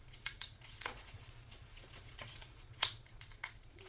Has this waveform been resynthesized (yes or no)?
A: yes